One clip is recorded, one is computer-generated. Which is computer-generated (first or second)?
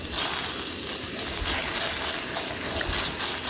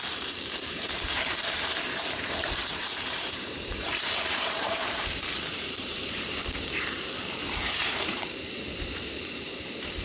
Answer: second